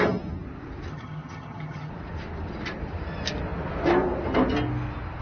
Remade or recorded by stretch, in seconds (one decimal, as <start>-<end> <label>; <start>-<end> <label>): 0.0-0.9 recorded; 0.9-1.9 remade; 1.9-5.2 recorded